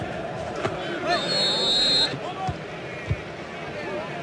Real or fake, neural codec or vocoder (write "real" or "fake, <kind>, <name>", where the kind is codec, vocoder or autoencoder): real